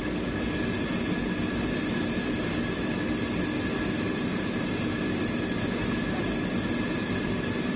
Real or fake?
real